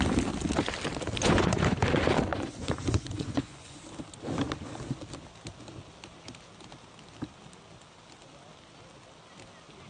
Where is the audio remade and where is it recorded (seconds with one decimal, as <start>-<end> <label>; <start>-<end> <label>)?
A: 0.0-1.2 recorded; 1.2-1.8 remade; 1.8-2.3 recorded; 2.3-3.8 remade; 3.8-9.9 recorded